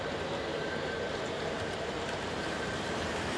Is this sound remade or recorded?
remade